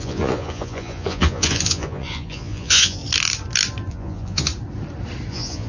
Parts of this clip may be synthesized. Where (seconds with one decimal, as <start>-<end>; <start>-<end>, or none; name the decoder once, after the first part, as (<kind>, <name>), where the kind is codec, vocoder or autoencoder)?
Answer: 0.0-3.0 (vocoder, Vocos); 3.9-4.5; 5.3-5.7